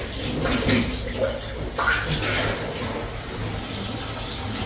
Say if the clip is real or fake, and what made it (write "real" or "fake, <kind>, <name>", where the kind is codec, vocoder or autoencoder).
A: real